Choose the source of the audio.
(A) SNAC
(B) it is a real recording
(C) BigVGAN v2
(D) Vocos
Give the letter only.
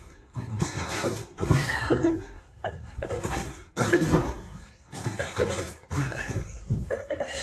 A